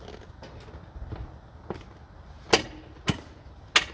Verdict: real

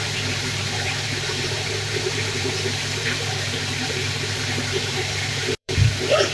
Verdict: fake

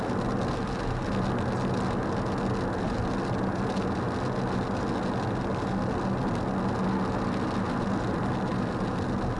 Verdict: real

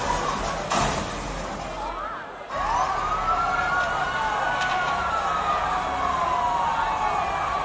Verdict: real